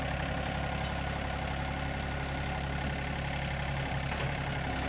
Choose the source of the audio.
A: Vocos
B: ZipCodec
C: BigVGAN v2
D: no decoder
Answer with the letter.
D